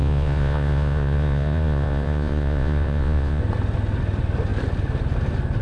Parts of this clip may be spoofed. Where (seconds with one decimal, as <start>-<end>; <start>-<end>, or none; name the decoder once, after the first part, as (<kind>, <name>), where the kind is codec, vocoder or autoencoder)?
0.0-3.4 (vocoder, Vocos)